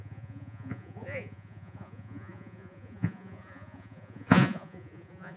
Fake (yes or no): yes